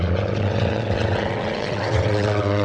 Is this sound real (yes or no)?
no